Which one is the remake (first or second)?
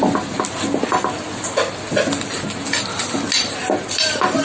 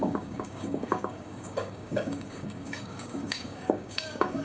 second